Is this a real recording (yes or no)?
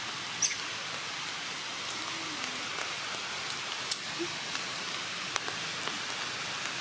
yes